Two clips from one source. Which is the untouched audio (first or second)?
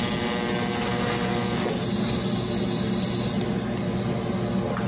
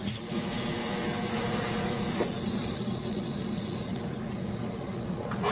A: first